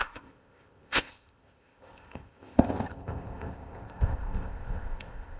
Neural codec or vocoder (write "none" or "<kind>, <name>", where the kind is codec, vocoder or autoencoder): codec, ZipCodec